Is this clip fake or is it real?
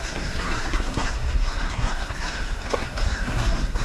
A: fake